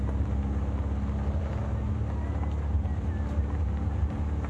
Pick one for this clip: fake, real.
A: real